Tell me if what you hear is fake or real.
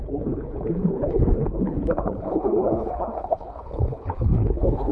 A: fake